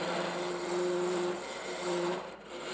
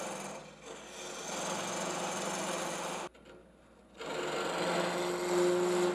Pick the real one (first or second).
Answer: second